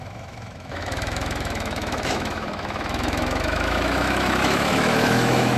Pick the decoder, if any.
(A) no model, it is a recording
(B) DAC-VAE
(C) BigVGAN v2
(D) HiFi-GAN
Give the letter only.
B